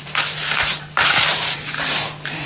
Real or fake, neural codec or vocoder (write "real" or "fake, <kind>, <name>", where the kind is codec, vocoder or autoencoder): fake, vocoder, BigVGAN v2